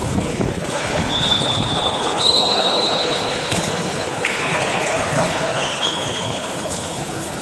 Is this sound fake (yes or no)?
yes